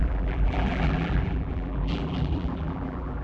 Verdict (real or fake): fake